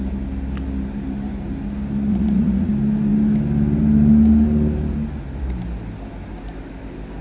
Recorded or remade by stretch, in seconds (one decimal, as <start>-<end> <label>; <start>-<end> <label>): 0.0-2.1 recorded; 2.1-2.7 remade; 2.7-7.2 recorded